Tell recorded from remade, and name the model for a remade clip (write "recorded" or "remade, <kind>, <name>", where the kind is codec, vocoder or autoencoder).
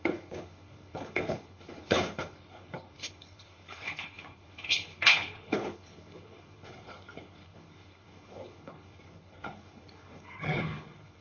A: remade, codec, HILCodec